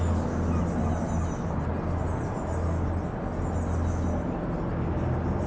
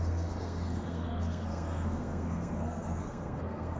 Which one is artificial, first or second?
second